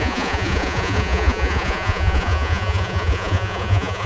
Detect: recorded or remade remade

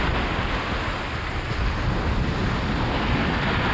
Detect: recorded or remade recorded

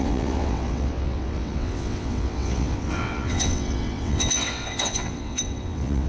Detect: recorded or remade remade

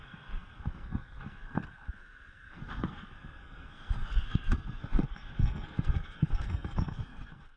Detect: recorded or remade remade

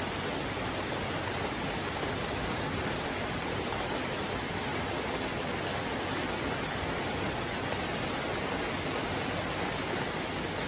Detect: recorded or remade recorded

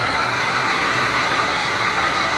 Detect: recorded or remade remade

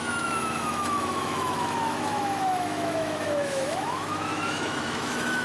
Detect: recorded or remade remade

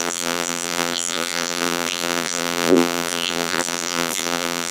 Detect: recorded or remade remade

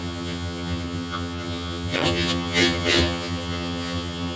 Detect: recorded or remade remade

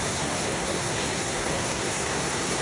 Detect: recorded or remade remade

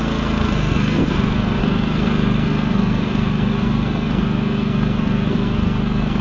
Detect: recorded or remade remade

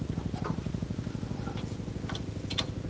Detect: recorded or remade recorded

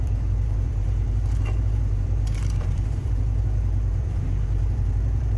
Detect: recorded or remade remade